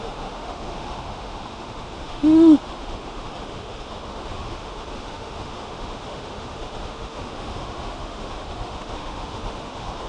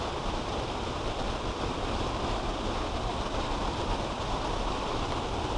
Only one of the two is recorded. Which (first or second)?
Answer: second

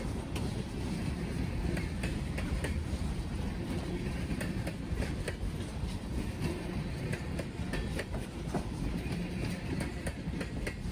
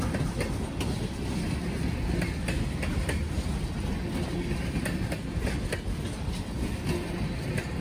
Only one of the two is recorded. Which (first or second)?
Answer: second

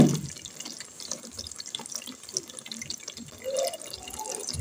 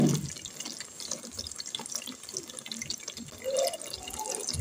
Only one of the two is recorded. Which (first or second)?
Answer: second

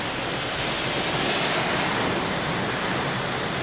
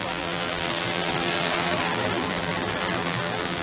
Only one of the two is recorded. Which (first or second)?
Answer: first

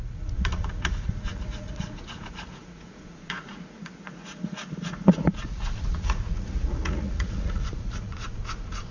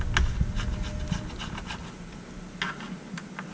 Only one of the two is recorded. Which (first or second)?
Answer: second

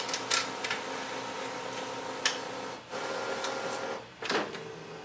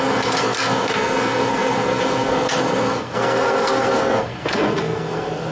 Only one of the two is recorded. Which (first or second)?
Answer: first